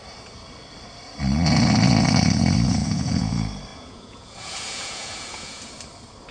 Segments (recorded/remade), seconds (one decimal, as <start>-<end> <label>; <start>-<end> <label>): 0.0-2.8 recorded; 2.8-3.3 remade; 3.3-3.7 recorded; 3.7-5.7 remade; 5.7-6.3 recorded

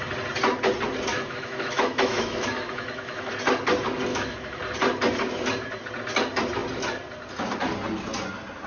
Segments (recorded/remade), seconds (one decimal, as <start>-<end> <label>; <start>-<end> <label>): 0.0-1.1 recorded; 1.1-3.3 remade; 3.3-4.1 recorded; 4.1-4.6 remade; 4.6-8.7 recorded

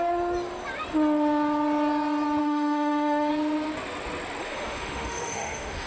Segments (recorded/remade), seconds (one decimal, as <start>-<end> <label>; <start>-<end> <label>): 0.0-2.4 recorded; 2.4-3.3 remade; 3.3-4.4 recorded; 4.4-5.9 remade